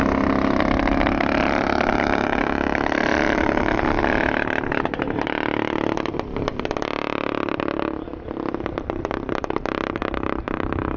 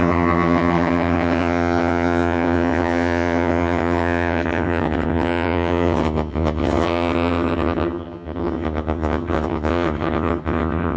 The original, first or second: first